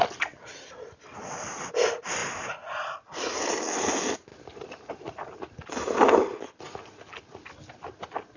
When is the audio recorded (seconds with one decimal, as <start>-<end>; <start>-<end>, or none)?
0.0-8.4